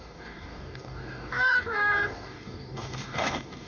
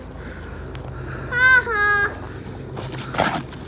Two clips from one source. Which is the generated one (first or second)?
first